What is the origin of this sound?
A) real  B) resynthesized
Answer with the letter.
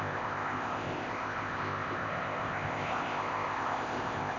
B